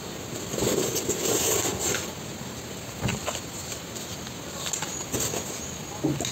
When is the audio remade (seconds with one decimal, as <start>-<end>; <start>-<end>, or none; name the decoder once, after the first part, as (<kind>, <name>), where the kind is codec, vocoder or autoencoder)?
3.1-3.9 (vocoder, BigVGAN v2)